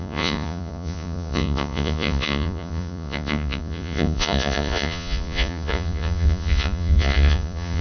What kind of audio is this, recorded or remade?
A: remade